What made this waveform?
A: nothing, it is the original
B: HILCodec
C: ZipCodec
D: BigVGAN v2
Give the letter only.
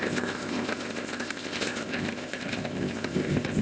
C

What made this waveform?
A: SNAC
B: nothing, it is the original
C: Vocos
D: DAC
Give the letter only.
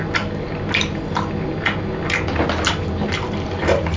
B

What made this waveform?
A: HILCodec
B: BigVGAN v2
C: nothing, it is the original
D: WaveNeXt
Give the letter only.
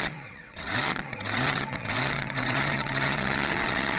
D